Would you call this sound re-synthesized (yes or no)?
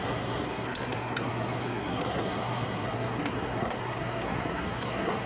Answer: yes